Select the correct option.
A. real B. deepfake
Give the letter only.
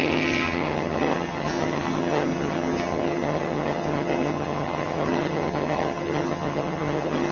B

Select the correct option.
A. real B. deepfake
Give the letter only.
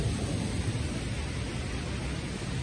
A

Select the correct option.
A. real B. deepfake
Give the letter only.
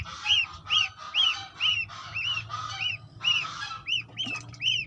A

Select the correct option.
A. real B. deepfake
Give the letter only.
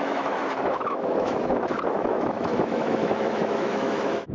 B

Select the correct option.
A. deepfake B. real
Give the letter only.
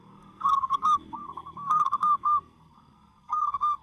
A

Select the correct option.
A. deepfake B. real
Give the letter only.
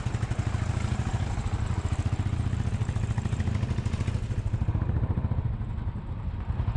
B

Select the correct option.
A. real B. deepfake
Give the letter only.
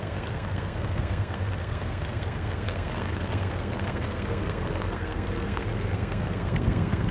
B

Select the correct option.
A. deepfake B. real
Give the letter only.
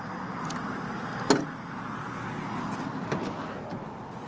B